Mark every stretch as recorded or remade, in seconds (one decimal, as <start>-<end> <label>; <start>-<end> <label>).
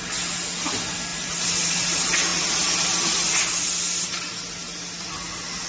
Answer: 0.0-1.1 recorded; 1.1-1.7 remade; 1.7-5.7 recorded